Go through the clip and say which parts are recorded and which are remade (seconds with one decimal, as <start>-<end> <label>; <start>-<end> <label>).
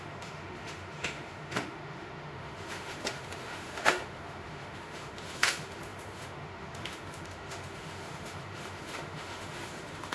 0.0-10.1 remade